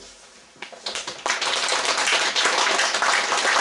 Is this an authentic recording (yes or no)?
yes